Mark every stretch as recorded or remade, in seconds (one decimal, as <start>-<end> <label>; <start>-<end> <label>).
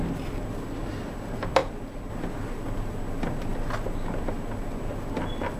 0.0-5.6 recorded